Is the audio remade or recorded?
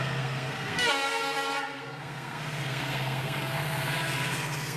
remade